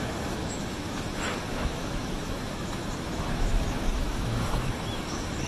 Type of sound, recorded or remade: remade